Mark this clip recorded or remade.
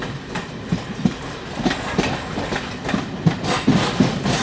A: recorded